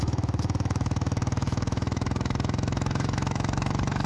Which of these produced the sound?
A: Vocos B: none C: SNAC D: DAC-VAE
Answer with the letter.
D